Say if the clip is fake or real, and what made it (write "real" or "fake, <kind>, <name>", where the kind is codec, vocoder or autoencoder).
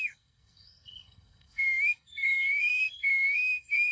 fake, codec, SNAC